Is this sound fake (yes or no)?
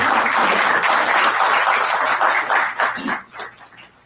no